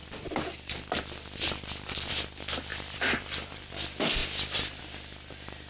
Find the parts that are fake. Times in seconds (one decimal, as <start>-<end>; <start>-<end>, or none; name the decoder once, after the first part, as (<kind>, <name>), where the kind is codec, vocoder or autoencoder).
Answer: 0.0-2.1 (vocoder, BigVGAN v2); 2.7-3.7; 4.2-4.8